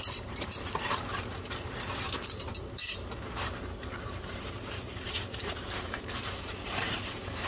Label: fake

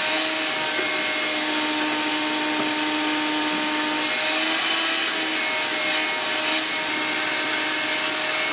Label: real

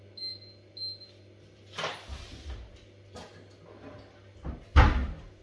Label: real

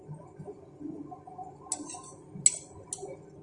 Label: real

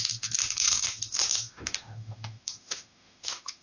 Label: fake